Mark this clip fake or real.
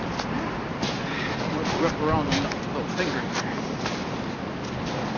real